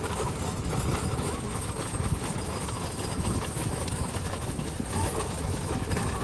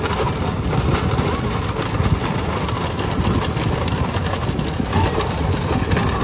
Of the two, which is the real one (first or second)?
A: second